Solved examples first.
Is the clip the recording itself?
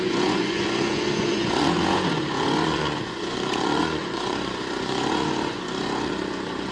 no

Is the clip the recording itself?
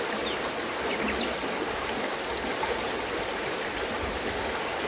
yes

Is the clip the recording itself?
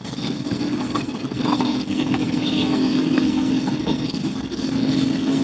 no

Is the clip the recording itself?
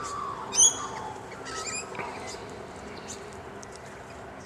yes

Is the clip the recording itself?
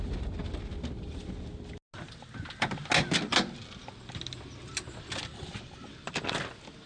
yes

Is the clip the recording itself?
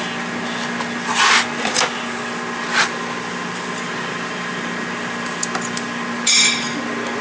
yes